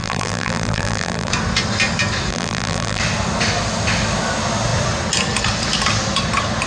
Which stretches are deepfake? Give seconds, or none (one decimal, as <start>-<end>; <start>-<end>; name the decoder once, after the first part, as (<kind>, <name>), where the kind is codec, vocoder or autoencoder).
0.0-1.3 (vocoder, BigVGAN v2); 2.3-3.0